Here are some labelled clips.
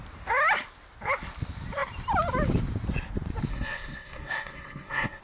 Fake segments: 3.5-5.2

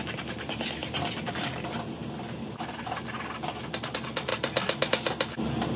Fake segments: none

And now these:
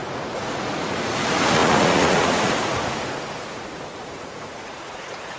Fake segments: 0.0-5.4

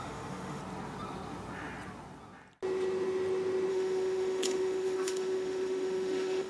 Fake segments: 0.0-0.6; 3.7-6.5

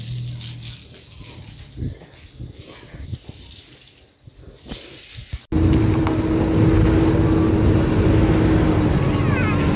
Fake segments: none